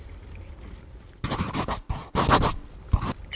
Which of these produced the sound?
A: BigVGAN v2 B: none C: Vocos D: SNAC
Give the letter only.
B